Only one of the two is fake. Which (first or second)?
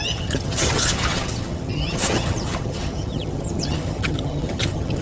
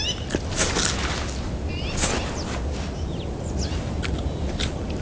first